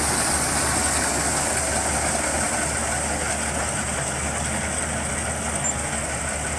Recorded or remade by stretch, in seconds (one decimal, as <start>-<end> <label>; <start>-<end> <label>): 0.0-6.6 recorded